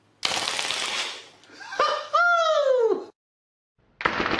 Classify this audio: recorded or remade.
recorded